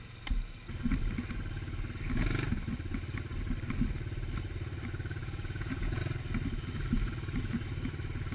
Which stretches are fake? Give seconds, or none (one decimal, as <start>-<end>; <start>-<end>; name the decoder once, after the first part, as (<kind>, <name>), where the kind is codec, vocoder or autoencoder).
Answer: 5.2-6.0 (vocoder, Vocos)

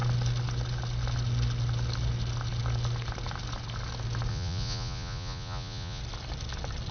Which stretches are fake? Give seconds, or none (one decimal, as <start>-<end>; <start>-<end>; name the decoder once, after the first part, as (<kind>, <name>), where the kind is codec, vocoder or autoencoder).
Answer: 4.3-6.0 (vocoder, Vocos)

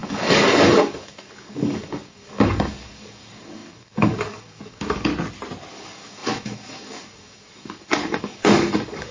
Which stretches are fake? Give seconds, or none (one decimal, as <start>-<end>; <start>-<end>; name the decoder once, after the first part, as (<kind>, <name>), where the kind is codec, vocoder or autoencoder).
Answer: 0.0-5.1 (codec, DAC); 5.7-9.1

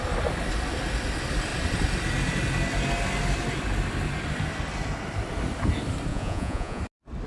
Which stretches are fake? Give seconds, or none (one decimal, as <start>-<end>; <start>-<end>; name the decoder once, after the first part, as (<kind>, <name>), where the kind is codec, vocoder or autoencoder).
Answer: 6.1-6.8 (vocoder, Vocos)